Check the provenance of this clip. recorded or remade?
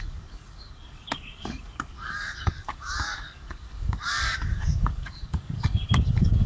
remade